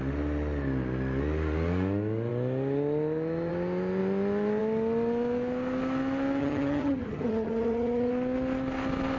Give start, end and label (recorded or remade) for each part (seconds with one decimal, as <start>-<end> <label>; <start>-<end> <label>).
0.0-6.4 recorded; 6.4-8.1 remade; 8.1-9.2 recorded